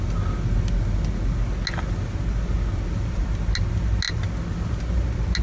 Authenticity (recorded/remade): recorded